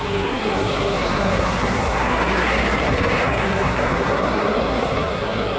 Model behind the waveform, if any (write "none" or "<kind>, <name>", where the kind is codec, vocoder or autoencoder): codec, SNAC